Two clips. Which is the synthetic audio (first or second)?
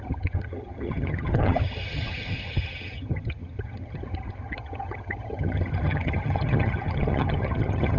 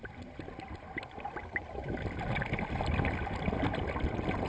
first